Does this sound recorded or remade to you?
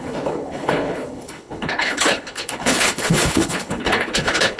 remade